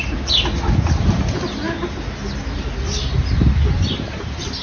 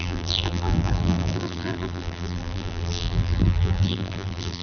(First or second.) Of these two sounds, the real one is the first